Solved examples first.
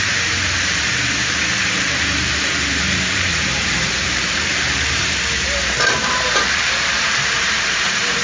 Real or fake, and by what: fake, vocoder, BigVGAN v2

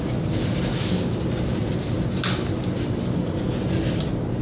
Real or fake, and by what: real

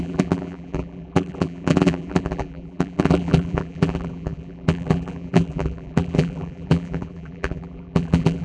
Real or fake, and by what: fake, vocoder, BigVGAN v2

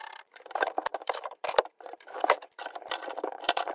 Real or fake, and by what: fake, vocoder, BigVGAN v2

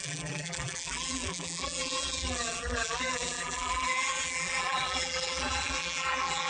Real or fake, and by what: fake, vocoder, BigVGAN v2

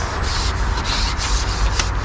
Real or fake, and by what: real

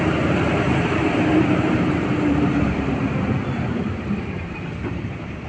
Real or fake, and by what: fake, vocoder, BigVGAN v2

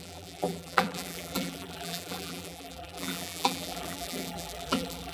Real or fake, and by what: fake, vocoder, BigVGAN v2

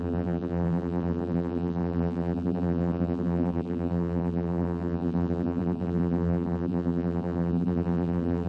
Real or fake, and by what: fake, vocoder, BigVGAN v2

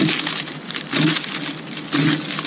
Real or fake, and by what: real